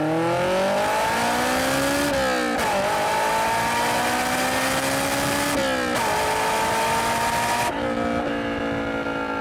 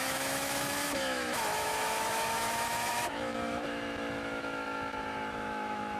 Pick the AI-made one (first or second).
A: second